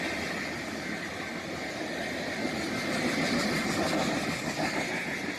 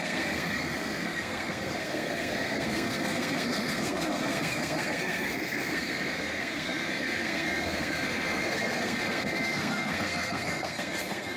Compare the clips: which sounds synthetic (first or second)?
second